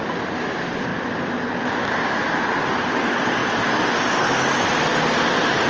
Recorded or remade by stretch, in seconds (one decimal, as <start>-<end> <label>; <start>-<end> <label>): 0.0-3.4 recorded; 3.4-4.1 remade; 4.1-5.7 recorded